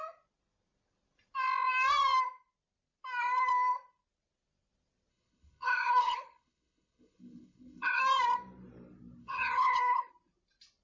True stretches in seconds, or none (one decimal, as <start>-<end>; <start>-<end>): 0.0-5.1; 8.0-9.2; 10.1-10.8